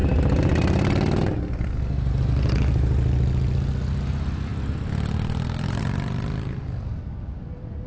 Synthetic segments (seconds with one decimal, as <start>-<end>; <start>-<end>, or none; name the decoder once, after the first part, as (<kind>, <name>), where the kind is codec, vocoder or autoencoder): none